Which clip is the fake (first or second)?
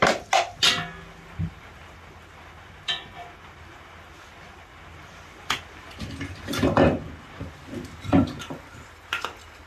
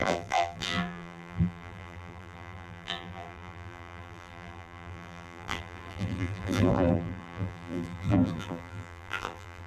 second